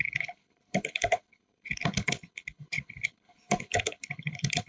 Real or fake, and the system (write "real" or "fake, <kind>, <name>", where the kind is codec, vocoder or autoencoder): fake, codec, HILCodec